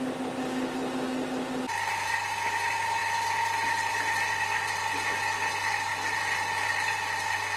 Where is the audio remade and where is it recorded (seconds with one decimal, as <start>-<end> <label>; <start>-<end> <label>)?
0.0-7.6 recorded